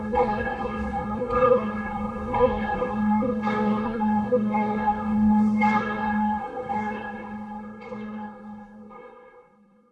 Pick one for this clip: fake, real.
fake